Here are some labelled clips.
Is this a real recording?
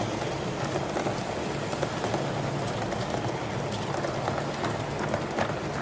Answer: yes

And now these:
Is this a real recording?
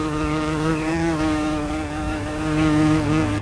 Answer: no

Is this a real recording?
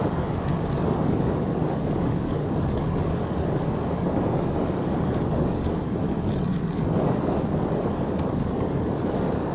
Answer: no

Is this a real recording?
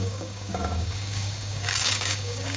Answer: no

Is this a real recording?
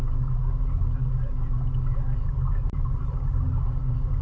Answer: yes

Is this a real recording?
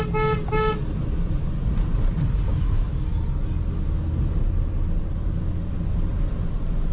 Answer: yes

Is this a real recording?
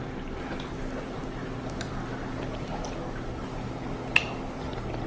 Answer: yes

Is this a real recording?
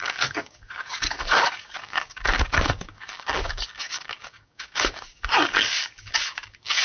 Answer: no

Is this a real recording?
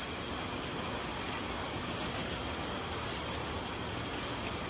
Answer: yes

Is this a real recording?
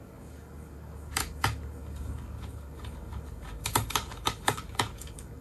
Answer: no